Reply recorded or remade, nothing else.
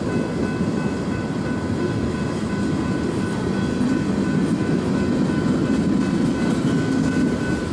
recorded